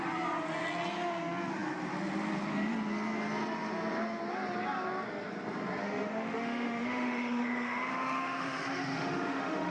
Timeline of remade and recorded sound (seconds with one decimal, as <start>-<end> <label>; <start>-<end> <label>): 0.0-5.8 recorded; 5.8-9.7 remade